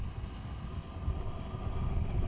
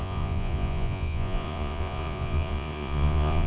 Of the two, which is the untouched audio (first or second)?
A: first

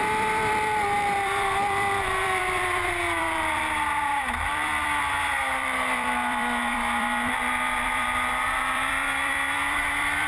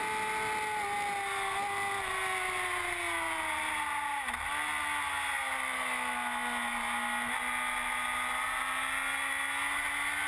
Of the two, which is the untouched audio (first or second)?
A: second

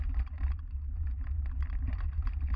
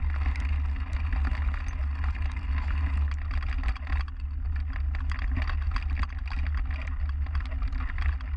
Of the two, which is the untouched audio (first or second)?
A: second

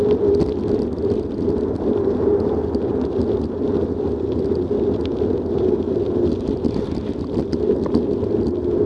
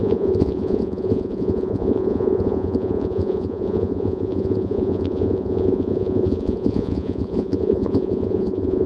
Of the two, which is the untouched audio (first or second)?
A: first